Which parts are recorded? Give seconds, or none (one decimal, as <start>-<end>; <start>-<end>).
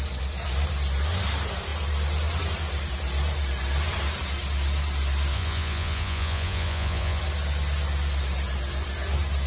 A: 0.0-5.3; 7.2-9.5